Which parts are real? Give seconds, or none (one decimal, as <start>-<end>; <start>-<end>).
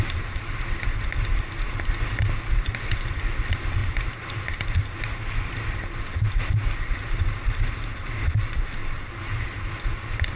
0.0-8.8; 9.6-10.4